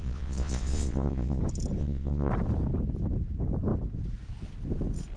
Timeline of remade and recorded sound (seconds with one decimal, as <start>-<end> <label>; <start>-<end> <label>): 0.0-1.4 remade; 1.4-1.8 recorded; 1.8-2.3 remade; 2.3-5.2 recorded